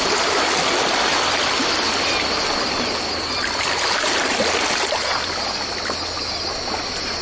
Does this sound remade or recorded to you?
recorded